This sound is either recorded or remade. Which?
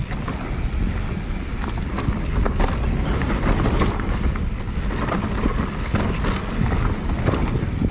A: recorded